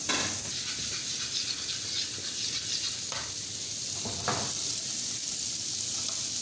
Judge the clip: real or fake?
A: real